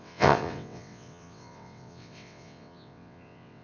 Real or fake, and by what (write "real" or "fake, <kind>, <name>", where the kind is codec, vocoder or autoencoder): fake, vocoder, WaveNeXt